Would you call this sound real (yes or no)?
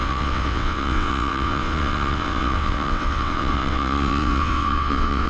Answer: no